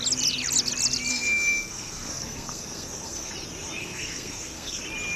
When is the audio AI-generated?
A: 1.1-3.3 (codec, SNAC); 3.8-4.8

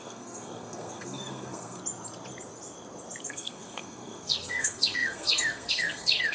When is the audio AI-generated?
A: 0.0-1.8 (codec, SNAC); 3.2-6.3

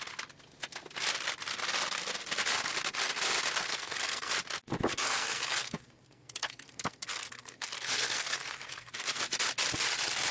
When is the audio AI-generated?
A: 3.7-4.3 (codec, SNAC); 4.9-9.2

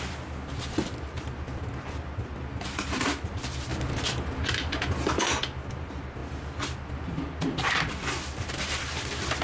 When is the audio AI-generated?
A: none